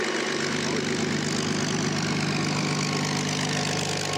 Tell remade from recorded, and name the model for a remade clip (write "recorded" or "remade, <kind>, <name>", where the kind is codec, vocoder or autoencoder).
recorded